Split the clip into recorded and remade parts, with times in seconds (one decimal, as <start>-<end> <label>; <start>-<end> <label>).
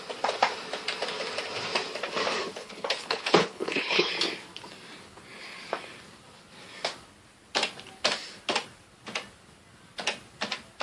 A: 0.0-2.6 recorded; 2.6-4.1 remade; 4.1-10.8 recorded